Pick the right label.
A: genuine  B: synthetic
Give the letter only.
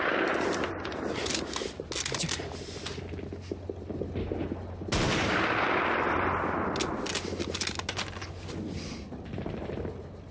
A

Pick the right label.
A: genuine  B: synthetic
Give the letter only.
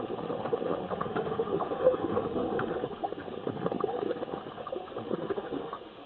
B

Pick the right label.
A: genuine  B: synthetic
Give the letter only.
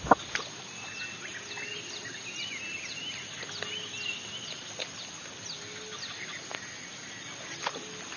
A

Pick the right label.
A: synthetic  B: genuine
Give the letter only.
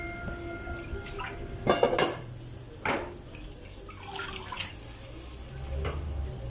B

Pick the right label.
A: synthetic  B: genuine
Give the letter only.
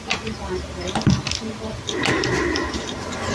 B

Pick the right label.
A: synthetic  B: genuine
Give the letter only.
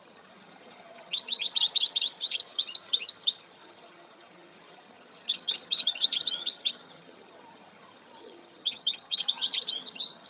A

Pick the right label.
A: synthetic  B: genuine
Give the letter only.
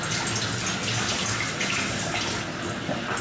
B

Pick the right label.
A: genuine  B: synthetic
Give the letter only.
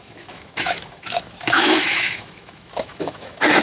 B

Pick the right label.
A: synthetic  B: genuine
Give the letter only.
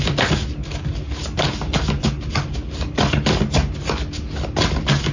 B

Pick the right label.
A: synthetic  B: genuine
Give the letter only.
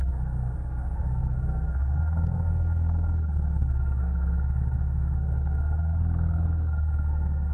A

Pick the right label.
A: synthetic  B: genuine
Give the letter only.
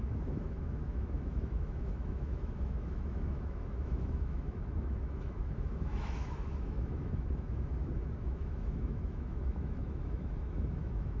A